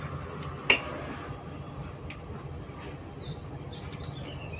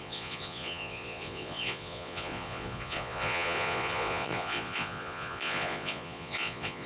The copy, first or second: second